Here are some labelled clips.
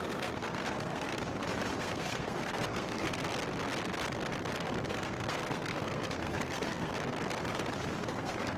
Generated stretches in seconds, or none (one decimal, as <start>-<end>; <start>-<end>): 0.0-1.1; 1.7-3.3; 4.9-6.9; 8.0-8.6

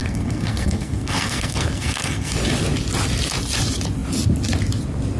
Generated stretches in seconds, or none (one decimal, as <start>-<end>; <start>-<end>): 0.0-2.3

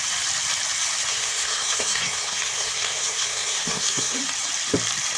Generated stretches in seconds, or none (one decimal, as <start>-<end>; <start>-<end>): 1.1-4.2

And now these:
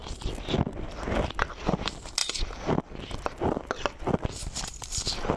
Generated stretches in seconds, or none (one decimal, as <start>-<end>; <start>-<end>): none

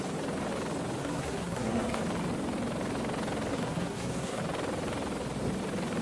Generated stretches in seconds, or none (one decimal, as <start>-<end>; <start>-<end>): 1.0-2.0; 3.5-4.4